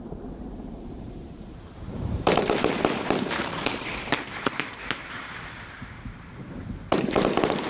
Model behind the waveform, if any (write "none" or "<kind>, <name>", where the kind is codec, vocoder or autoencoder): vocoder, BigVGAN v2